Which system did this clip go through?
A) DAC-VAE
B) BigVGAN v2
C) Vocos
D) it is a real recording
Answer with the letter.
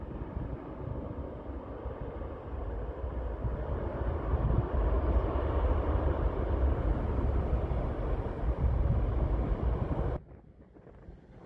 D